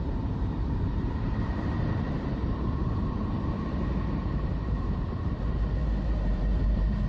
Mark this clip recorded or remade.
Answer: remade